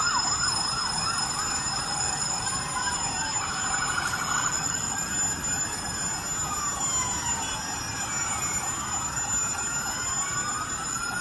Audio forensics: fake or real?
real